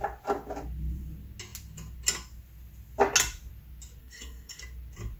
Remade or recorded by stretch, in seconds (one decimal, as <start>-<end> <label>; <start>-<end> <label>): 0.0-4.0 recorded; 4.0-4.6 remade; 4.6-5.2 recorded